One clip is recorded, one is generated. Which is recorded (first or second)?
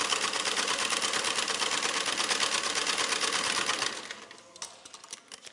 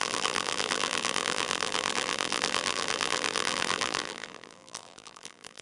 first